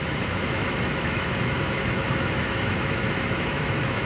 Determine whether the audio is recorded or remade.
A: remade